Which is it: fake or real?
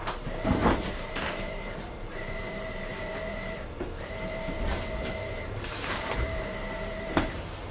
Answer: fake